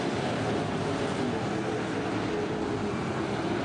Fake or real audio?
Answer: real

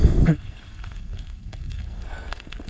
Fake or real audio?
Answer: fake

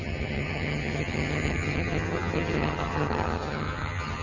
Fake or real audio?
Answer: fake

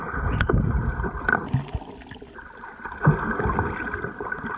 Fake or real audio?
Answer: real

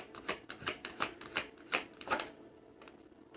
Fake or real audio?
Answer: fake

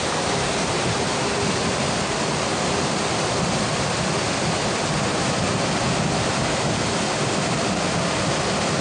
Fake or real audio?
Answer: real